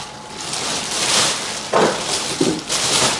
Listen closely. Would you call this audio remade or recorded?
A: recorded